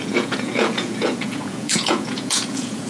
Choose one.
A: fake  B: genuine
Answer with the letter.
A